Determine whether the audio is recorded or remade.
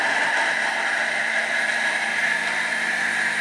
recorded